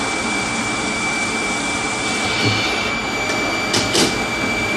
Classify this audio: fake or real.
fake